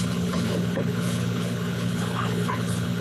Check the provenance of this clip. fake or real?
fake